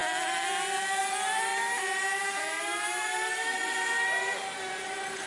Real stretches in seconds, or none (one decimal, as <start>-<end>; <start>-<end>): 0.0-5.3